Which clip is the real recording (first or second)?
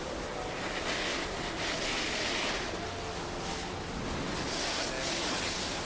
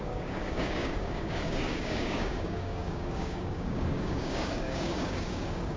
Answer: first